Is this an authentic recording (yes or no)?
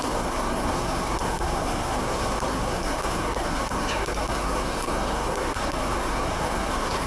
no